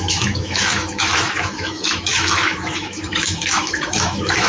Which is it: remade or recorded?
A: remade